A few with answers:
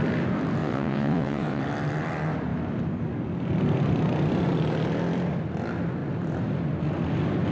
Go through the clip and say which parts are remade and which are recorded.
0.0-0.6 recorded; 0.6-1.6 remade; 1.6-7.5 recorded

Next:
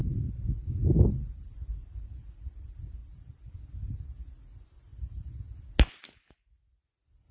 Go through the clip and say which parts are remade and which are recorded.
0.0-7.3 recorded

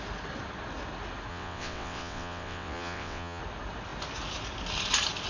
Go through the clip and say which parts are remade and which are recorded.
0.0-1.3 recorded; 1.3-3.4 remade; 3.4-5.3 recorded

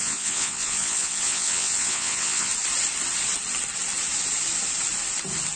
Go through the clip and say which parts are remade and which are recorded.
0.0-2.5 remade; 2.5-5.6 recorded